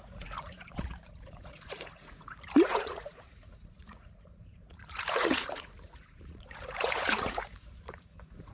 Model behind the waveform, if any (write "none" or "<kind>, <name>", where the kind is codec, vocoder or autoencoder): vocoder, Vocos